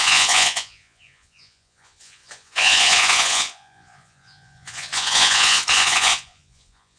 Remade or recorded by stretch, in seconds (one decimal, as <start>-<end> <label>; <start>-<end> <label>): 0.0-7.0 remade